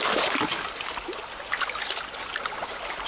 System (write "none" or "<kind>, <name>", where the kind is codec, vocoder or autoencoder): none